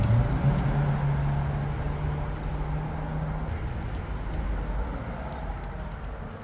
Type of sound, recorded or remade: recorded